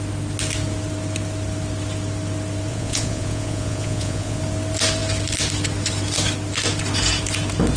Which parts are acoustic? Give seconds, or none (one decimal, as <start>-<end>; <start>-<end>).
0.0-2.7; 4.4-7.8